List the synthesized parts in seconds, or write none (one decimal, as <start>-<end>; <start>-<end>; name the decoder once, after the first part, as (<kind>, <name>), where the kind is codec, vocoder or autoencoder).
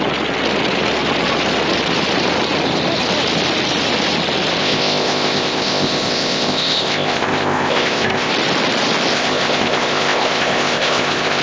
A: 4.6-8.3 (codec, ZipCodec); 9.1-11.4